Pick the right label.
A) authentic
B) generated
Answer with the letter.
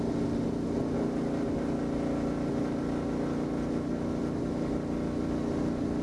A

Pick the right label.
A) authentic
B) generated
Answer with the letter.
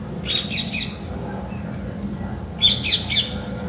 A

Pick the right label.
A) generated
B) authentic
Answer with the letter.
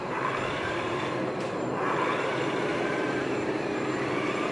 A